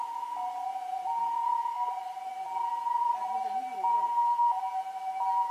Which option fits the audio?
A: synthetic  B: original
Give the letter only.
B